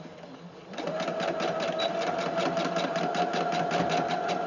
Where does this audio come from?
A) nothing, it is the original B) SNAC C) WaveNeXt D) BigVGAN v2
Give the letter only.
A